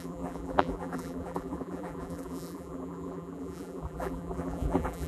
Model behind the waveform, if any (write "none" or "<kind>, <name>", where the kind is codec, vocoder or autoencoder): vocoder, BigVGAN v2